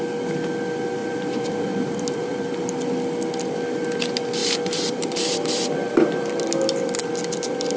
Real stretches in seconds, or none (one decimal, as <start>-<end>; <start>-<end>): 0.0-1.0; 2.5-4.4; 6.5-7.8